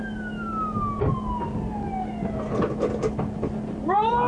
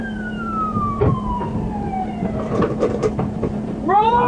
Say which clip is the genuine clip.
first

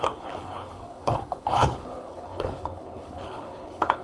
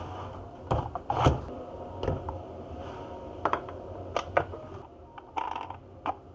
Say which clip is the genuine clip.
second